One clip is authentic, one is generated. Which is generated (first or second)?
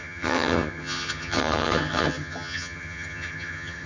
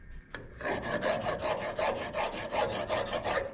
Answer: first